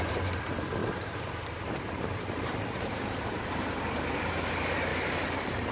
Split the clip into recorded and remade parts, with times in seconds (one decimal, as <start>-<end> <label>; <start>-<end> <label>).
0.0-0.8 recorded; 0.8-4.2 remade; 4.2-4.9 recorded; 4.9-5.7 remade